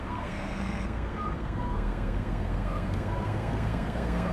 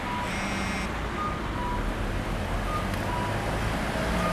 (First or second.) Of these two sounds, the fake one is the first